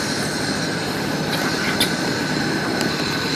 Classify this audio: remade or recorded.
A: recorded